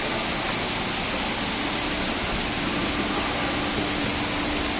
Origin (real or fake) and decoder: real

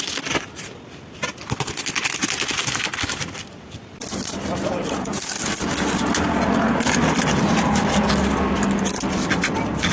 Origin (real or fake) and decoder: real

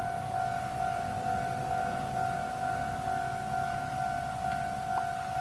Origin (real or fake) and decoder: real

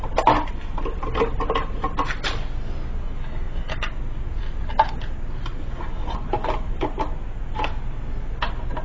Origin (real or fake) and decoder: real